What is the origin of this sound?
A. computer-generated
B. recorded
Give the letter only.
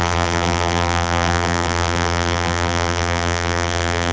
A